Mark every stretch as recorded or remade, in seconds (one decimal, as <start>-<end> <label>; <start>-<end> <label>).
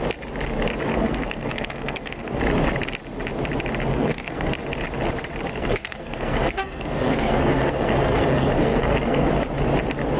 0.0-0.9 recorded; 0.9-2.4 remade; 2.4-3.9 recorded; 3.9-4.5 remade; 4.5-5.5 recorded; 5.5-9.3 remade; 9.3-10.2 recorded